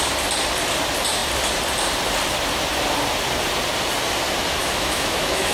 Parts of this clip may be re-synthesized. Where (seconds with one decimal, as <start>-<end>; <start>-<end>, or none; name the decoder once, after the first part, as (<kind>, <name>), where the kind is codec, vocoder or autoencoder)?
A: 4.6-5.5 (autoencoder, DAC-VAE)